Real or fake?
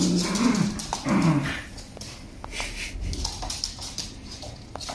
real